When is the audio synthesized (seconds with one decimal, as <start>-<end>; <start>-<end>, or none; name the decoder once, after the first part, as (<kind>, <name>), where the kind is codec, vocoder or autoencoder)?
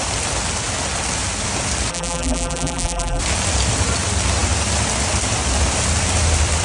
1.9-3.2 (vocoder, BigVGAN v2)